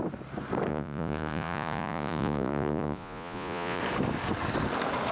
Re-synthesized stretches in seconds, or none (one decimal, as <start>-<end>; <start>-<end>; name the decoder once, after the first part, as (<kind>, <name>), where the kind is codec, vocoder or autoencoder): 0.7-3.8 (vocoder, Vocos)